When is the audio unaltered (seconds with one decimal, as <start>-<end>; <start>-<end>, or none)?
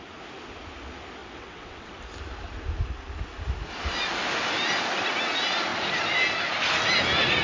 0.0-1.2; 2.0-7.4